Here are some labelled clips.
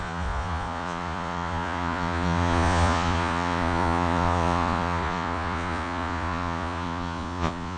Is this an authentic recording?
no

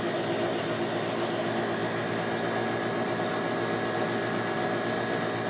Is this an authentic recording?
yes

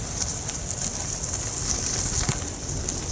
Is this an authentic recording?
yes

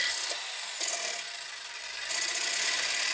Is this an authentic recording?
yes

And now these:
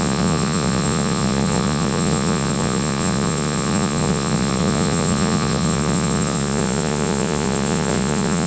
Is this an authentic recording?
no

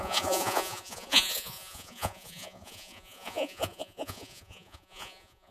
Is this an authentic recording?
no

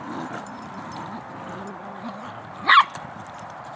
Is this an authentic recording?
yes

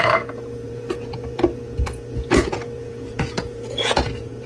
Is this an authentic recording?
no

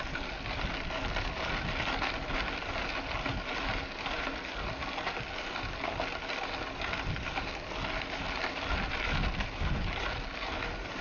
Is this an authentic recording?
yes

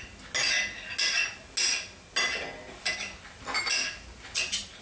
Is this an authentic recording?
yes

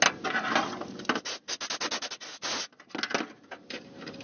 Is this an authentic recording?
yes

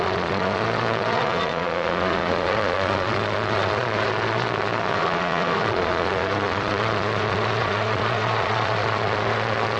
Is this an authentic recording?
no